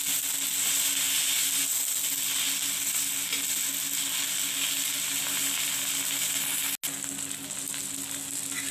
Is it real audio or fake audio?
real